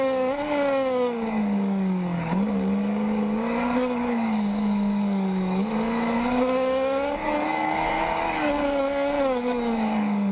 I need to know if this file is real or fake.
fake